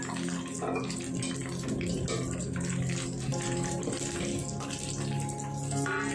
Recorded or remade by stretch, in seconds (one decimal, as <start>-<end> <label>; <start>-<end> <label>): 0.0-3.3 recorded; 3.3-3.9 remade; 3.9-6.1 recorded